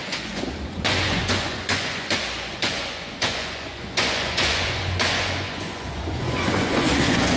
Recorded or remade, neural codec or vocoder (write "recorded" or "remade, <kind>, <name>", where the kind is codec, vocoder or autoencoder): remade, vocoder, Vocos